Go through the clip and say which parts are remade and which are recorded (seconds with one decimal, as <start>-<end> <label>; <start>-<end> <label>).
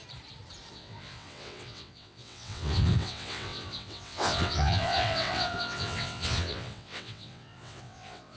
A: 0.0-0.7 recorded; 0.7-8.4 remade